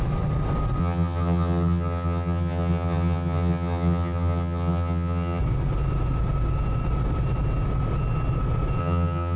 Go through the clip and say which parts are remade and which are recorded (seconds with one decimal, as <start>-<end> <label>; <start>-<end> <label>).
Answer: 0.0-0.8 recorded; 0.8-5.4 remade; 5.4-8.8 recorded; 8.8-9.4 remade